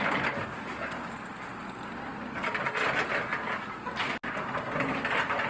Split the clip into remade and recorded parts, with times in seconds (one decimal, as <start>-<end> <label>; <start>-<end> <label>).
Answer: 0.0-5.5 recorded